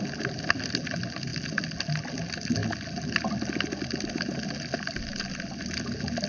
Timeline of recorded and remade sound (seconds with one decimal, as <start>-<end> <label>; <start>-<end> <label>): 0.0-6.3 recorded